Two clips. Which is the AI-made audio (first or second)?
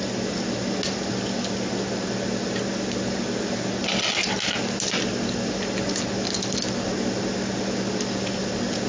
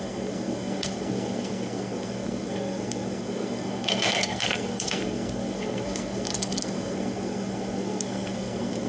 second